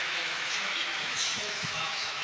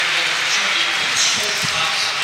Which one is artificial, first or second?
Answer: first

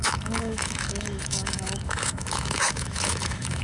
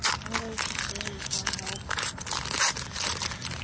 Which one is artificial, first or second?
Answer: first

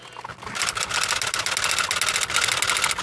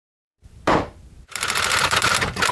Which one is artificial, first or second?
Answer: second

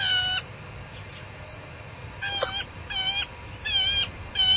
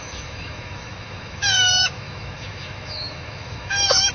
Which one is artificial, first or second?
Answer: second